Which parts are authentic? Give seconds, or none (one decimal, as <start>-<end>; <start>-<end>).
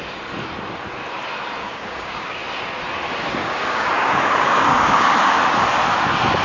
0.0-1.6; 2.4-3.4; 5.4-6.4